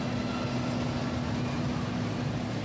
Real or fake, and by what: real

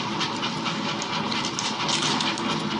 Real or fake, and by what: real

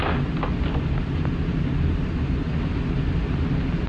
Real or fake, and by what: real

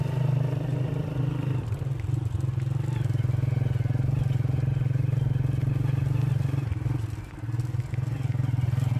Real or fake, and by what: real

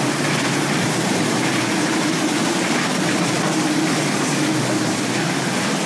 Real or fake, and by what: fake, vocoder, BigVGAN v2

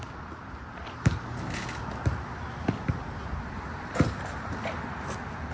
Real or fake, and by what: real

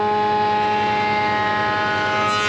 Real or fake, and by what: real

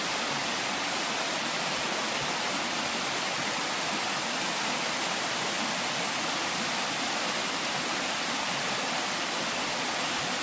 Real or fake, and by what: real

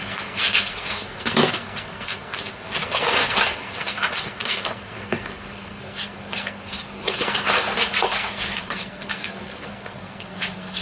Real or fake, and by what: fake, codec, SNAC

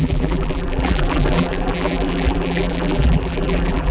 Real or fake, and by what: fake, vocoder, BigVGAN v2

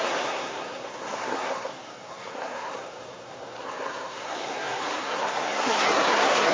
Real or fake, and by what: fake, codec, SNAC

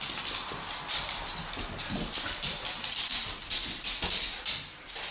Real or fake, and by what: real